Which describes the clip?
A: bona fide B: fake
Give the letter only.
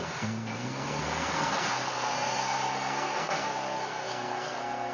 B